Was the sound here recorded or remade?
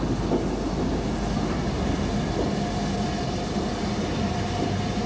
recorded